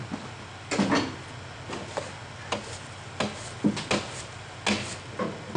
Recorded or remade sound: recorded